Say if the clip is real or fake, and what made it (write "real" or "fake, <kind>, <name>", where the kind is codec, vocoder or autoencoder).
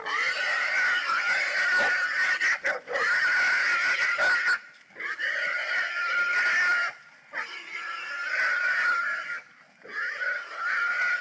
real